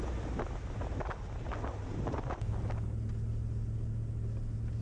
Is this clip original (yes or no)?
yes